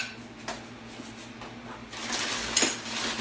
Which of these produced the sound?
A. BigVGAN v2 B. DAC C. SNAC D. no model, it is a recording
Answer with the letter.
D